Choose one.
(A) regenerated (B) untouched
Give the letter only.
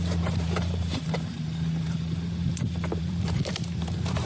A